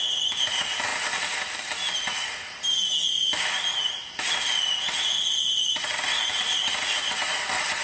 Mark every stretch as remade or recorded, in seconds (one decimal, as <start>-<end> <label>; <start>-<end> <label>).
0.0-7.8 recorded